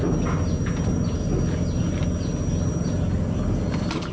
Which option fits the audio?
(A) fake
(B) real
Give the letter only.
B